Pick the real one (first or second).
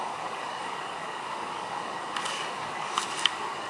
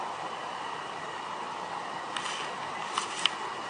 second